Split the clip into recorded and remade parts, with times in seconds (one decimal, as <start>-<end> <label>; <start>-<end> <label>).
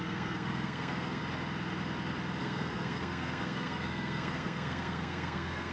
0.0-1.2 remade; 1.2-2.4 recorded; 2.4-5.7 remade